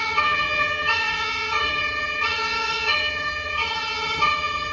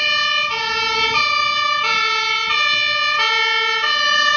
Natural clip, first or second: second